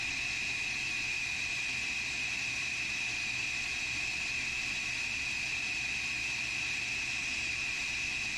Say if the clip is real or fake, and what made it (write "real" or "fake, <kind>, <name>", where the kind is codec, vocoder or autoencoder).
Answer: real